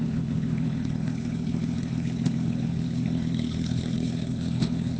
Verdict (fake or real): fake